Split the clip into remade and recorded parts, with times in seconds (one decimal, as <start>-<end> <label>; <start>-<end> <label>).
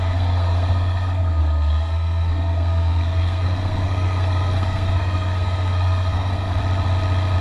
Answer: 0.0-6.6 remade; 6.6-7.4 recorded